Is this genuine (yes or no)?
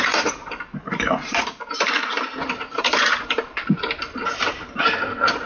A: no